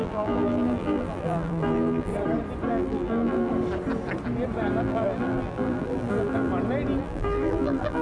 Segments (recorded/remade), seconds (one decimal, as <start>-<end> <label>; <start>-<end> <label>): 0.0-2.1 remade; 2.1-2.7 recorded; 2.7-3.5 remade; 3.5-4.8 recorded; 4.8-6.5 remade; 6.5-7.0 recorded; 7.0-8.0 remade